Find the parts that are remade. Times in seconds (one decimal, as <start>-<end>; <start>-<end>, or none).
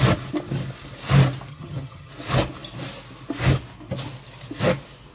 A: 1.5-2.1